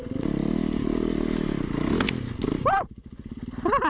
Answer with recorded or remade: recorded